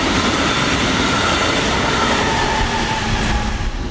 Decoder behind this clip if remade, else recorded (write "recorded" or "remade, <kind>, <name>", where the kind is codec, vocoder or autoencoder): recorded